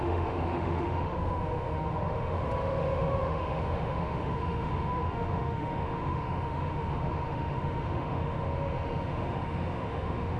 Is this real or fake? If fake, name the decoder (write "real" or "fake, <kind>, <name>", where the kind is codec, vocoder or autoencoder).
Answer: fake, autoencoder, DAC-VAE